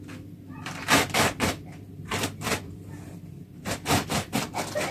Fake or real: fake